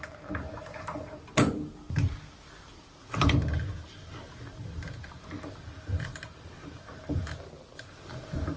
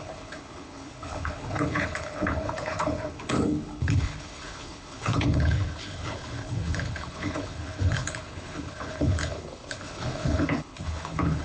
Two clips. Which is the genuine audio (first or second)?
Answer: first